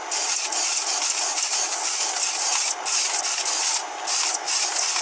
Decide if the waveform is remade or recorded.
recorded